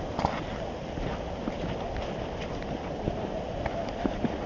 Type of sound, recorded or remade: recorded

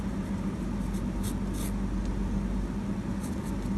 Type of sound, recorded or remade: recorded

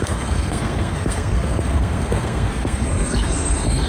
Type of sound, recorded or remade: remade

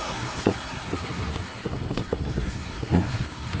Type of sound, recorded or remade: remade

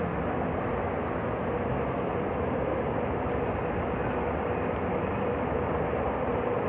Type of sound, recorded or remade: recorded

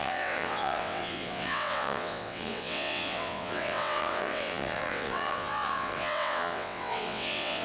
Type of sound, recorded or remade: remade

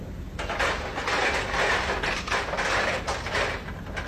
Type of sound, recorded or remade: recorded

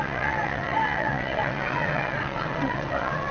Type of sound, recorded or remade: remade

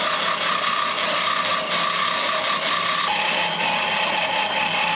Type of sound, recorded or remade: recorded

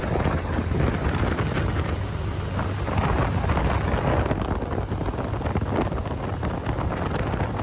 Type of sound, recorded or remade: recorded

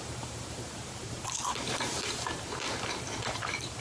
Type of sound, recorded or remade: remade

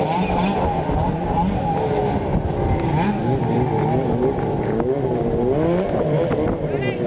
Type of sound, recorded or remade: recorded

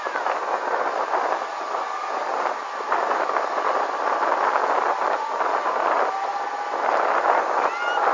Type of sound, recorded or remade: recorded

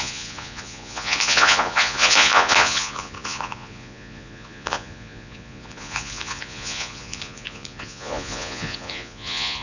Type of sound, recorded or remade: remade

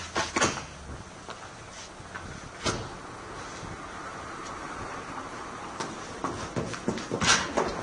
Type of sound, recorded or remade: recorded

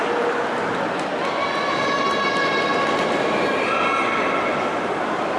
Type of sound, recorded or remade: recorded